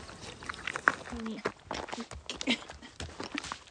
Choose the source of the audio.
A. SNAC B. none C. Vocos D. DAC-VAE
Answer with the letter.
B